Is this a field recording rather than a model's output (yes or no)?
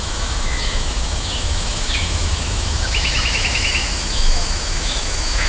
no